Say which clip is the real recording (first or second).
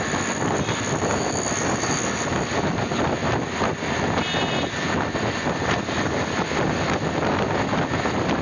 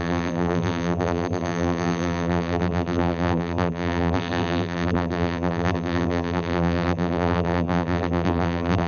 first